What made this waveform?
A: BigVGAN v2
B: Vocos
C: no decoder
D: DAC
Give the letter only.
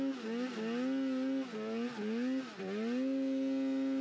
C